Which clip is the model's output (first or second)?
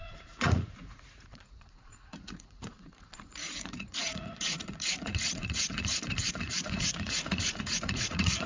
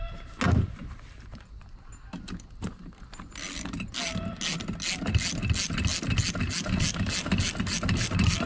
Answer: first